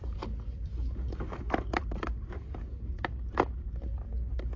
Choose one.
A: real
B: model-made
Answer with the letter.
B